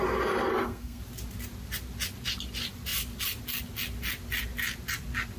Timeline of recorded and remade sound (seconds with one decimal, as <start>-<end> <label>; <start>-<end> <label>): 0.0-0.5 recorded; 0.5-1.0 remade; 1.0-5.4 recorded